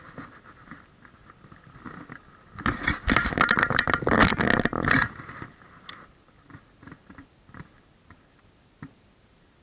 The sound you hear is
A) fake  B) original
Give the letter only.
B